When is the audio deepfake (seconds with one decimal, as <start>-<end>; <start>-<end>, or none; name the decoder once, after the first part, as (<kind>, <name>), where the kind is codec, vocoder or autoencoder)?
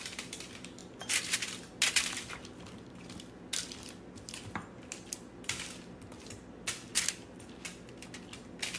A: none